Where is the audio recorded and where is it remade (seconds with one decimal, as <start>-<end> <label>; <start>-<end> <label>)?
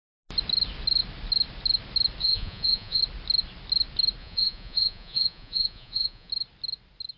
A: 0.0-2.2 recorded; 2.2-3.0 remade; 3.0-4.2 recorded; 4.2-6.3 remade; 6.3-7.2 recorded